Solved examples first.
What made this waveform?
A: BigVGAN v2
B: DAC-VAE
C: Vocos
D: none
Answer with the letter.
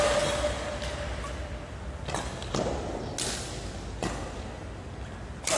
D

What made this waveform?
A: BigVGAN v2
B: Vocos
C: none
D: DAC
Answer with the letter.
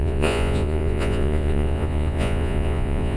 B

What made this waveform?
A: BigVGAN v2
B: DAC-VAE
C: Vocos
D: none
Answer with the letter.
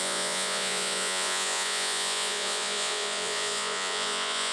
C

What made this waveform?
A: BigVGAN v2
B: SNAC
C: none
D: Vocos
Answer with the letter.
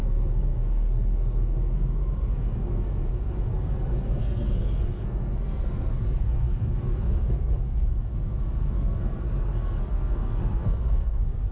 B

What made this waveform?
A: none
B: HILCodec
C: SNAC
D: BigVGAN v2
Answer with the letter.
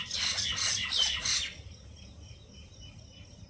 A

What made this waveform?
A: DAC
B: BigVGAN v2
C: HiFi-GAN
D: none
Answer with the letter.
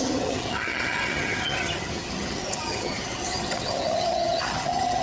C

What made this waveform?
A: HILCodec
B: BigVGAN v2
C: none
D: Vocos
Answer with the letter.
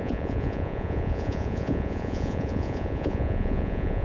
D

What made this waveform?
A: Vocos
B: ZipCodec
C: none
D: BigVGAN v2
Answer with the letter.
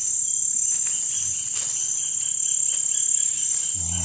C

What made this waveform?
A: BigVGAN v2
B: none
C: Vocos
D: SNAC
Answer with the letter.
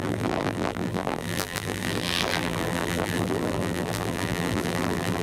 A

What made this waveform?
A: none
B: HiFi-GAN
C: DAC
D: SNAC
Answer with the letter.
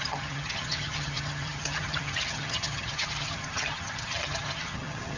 B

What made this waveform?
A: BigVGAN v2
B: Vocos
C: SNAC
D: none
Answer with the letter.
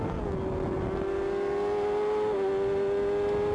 D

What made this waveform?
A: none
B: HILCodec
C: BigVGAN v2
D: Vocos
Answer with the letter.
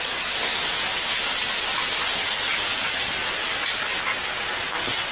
A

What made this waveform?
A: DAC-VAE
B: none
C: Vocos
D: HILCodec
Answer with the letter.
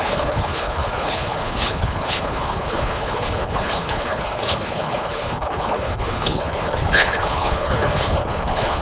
D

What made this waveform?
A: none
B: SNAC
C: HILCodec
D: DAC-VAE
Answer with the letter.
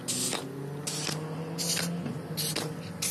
A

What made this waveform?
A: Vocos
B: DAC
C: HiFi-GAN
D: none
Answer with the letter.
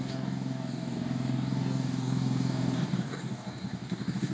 B